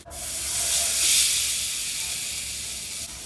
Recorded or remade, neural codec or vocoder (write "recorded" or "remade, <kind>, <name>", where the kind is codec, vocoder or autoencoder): recorded